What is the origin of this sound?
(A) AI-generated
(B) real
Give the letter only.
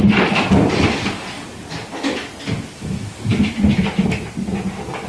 B